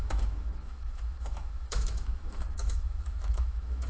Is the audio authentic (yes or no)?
no